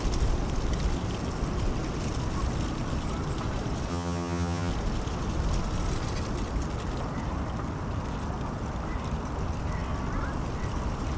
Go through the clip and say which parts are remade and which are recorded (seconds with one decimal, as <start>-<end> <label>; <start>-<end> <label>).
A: 0.0-3.9 recorded; 3.9-4.7 remade; 4.7-11.2 recorded